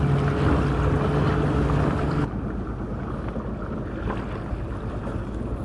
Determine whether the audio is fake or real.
real